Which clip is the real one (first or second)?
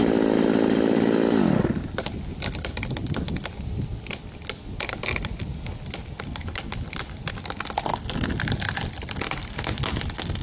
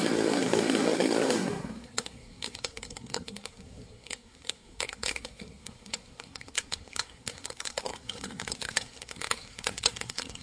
first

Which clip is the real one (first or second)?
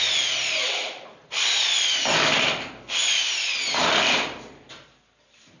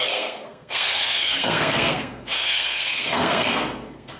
first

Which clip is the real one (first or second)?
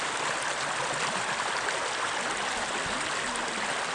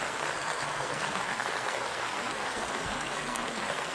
first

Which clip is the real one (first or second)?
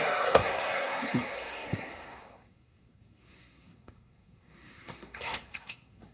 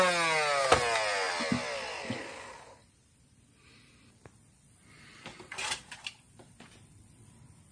second